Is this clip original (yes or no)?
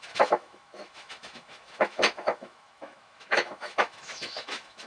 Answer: no